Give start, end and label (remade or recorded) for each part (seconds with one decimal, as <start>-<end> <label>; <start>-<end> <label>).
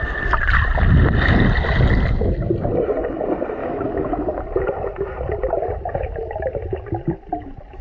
0.0-3.6 recorded; 3.6-4.4 remade; 4.4-7.8 recorded